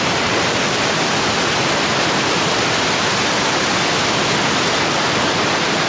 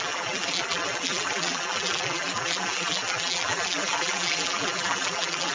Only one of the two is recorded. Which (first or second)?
first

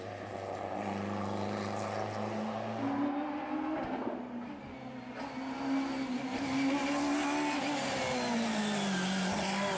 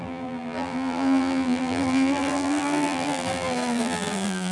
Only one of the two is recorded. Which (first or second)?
first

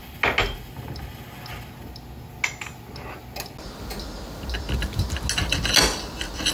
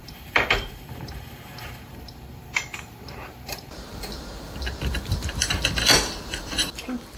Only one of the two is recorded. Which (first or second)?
first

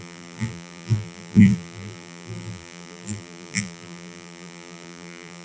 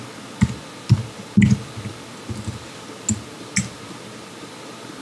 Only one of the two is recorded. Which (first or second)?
second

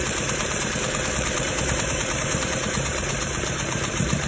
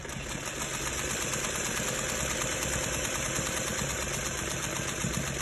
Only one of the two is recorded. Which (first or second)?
second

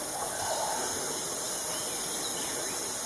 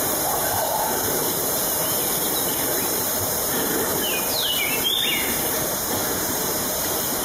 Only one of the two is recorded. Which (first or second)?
first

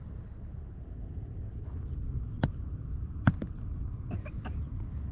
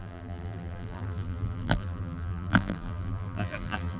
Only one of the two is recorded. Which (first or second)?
first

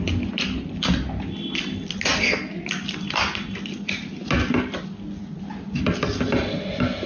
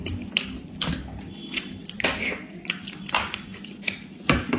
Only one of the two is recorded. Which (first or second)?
first